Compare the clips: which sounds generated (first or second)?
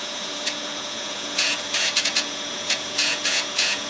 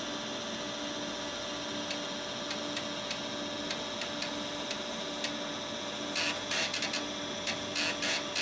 first